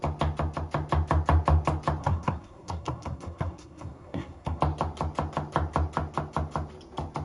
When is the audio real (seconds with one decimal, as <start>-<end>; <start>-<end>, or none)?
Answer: 0.0-2.0; 4.6-7.2